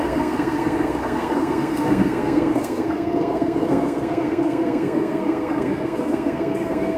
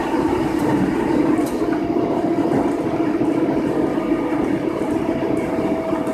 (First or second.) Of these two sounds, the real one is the second